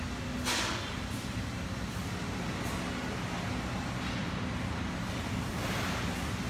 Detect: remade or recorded recorded